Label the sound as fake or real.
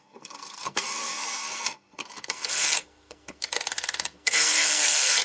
fake